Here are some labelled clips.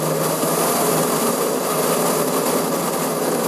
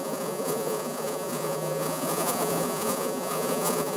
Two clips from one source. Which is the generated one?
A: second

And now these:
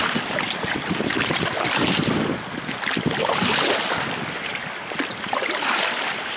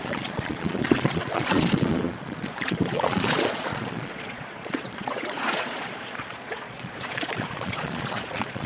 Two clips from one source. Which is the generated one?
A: second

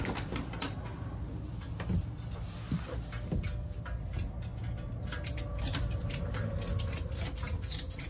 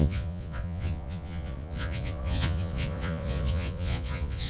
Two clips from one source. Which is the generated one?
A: second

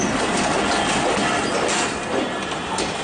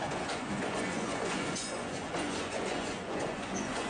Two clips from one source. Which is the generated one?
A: second